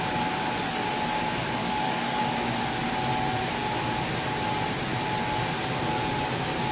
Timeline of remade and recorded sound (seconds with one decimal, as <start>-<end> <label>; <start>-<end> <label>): 0.0-1.6 recorded; 1.6-2.2 remade; 2.2-6.7 recorded